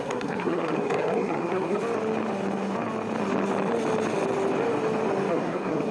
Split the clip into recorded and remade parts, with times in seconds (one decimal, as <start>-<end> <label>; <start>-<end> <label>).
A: 0.0-1.8 remade; 1.8-5.3 recorded; 5.3-5.9 remade

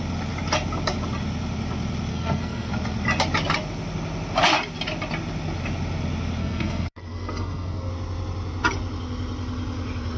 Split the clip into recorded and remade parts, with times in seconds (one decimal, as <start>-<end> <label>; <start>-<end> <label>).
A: 0.0-2.1 recorded; 2.1-2.7 remade; 2.7-6.4 recorded; 6.4-7.9 remade; 7.9-10.2 recorded

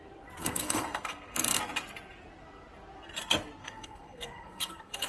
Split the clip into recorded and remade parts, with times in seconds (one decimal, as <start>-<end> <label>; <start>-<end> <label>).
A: 0.0-0.4 recorded; 0.4-1.6 remade; 1.6-3.6 recorded; 3.6-5.1 remade

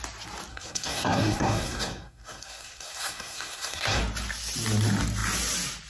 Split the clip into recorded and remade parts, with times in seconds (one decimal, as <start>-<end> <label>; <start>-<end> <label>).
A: 0.0-0.5 recorded; 0.5-4.0 remade; 4.0-5.9 recorded

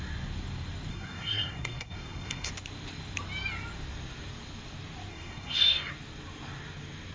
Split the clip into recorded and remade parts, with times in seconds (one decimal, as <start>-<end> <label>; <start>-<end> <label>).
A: 0.0-0.9 recorded; 0.9-2.5 remade; 2.5-5.1 recorded; 5.1-5.9 remade; 5.9-7.1 recorded